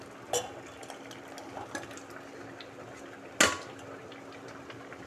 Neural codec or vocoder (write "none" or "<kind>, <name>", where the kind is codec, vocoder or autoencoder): none